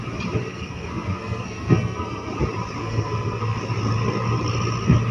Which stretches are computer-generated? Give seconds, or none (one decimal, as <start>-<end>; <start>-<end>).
0.5-2.3; 2.8-3.6